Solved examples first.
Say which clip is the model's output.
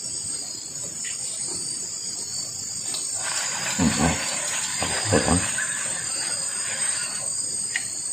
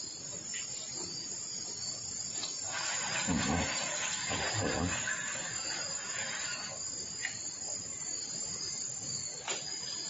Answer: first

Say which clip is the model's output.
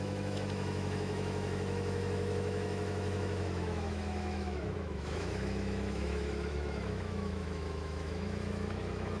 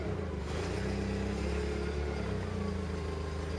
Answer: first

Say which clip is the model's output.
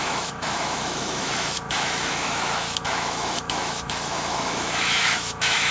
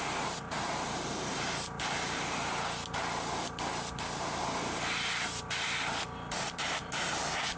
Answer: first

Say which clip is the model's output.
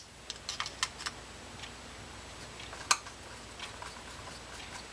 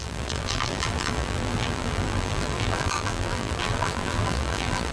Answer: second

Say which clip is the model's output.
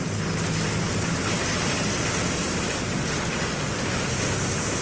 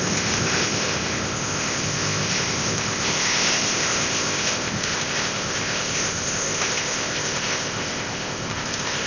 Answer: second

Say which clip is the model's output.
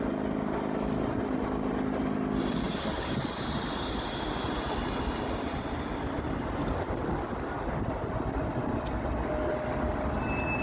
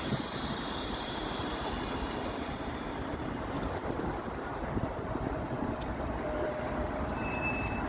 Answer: second